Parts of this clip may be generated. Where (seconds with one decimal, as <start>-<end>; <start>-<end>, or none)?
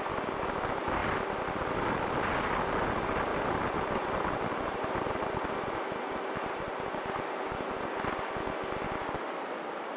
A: 1.0-2.4; 3.3-5.3